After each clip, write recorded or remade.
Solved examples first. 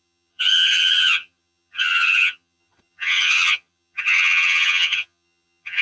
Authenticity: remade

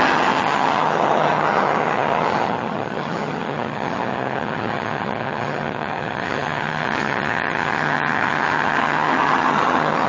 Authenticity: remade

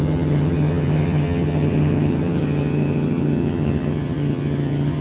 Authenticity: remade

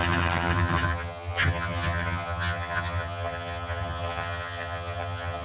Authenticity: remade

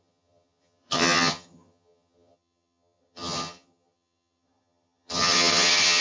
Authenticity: remade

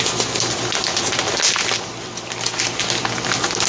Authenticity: recorded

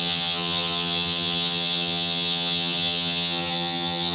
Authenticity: remade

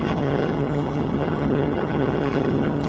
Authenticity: remade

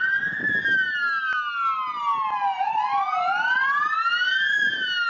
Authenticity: recorded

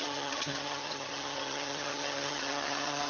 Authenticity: remade